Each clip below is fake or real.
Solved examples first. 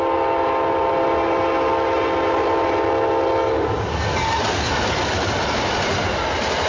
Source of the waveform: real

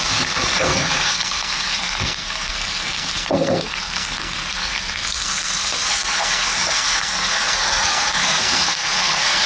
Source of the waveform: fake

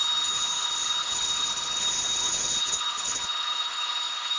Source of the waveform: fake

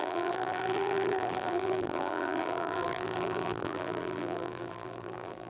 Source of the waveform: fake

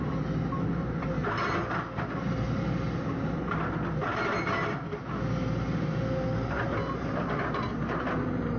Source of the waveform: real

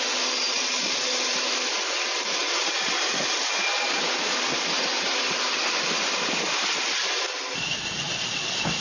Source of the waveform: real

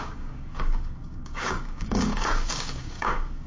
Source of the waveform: fake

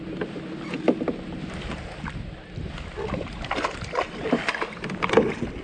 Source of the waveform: real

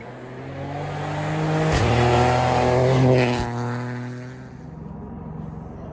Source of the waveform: real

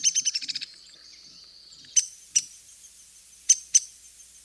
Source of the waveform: real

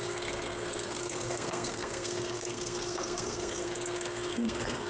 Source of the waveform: fake